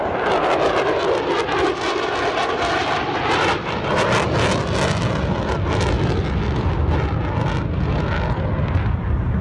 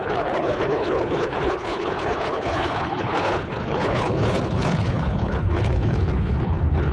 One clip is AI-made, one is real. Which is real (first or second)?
first